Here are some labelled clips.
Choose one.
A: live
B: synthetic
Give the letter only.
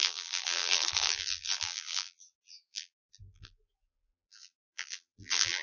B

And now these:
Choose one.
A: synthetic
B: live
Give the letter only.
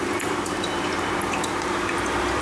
A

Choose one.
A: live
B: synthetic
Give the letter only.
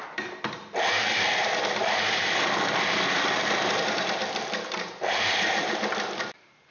B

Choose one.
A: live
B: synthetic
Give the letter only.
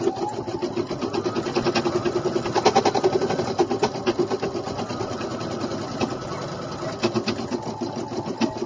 A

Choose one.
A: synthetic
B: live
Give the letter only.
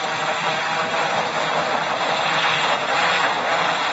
B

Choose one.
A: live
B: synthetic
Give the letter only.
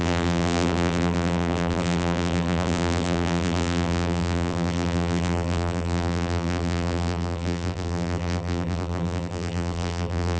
B